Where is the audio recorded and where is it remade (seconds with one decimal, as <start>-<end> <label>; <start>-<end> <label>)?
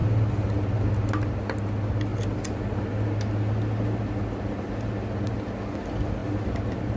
0.0-7.0 recorded